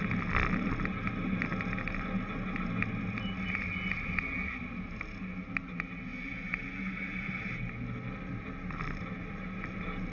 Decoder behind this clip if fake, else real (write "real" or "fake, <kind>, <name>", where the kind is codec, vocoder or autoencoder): real